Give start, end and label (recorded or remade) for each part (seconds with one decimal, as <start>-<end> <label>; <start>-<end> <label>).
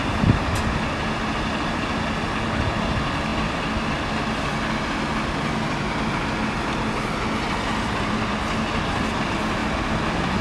0.0-10.4 recorded